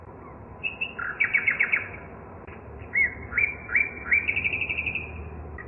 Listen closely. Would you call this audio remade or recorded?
recorded